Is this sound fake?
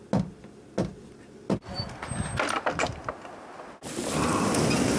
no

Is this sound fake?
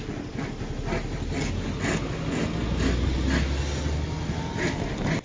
no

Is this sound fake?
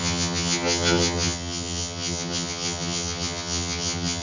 yes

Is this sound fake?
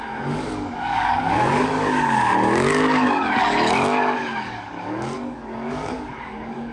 yes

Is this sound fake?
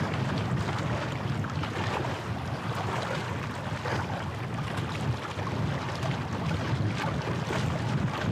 no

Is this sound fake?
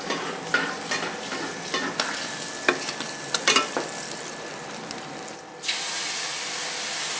no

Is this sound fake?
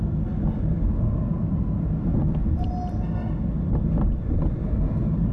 no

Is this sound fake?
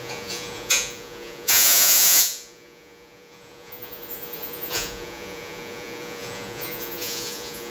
yes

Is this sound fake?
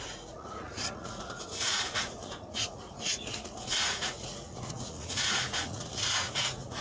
yes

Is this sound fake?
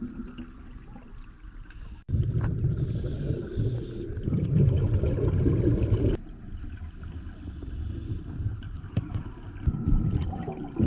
no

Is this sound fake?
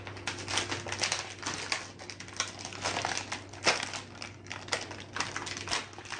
no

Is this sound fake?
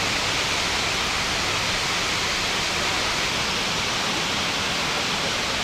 no